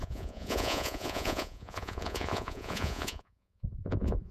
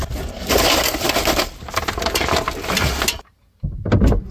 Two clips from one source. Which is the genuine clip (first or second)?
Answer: second